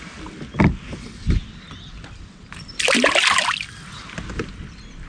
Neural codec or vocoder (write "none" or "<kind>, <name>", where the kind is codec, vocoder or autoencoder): none